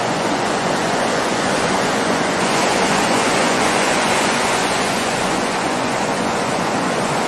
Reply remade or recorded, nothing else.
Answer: remade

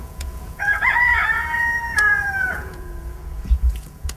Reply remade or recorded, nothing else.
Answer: remade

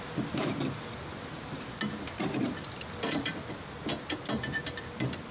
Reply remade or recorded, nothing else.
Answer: recorded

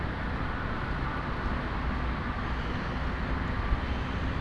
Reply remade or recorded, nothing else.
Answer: recorded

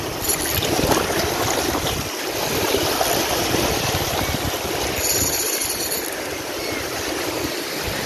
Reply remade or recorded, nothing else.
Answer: recorded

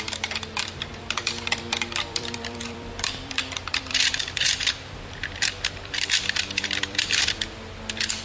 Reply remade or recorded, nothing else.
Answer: remade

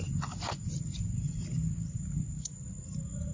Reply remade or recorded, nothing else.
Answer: recorded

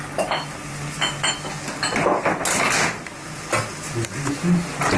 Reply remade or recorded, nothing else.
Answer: recorded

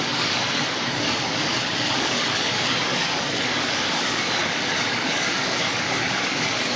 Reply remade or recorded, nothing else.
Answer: remade